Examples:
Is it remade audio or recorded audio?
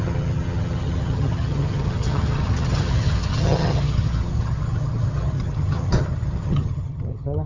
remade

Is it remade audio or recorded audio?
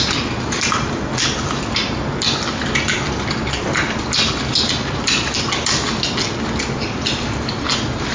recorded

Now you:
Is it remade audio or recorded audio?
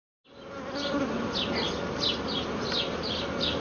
recorded